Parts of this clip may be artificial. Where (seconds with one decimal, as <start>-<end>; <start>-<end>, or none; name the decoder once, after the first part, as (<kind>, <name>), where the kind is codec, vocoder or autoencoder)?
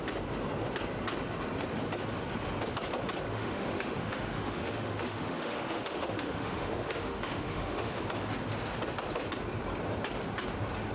3.3-8.0 (autoencoder, DAC-VAE)